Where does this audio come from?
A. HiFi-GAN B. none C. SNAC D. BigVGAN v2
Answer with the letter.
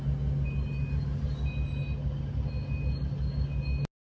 B